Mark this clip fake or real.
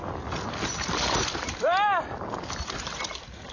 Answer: real